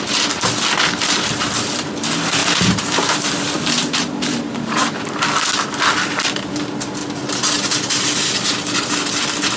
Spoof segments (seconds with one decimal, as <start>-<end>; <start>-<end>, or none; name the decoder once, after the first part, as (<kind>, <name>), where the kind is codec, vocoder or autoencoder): 2.4-3.2 (vocoder, BigVGAN v2); 3.8-5.0